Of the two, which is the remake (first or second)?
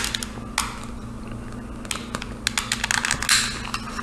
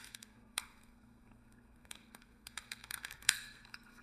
second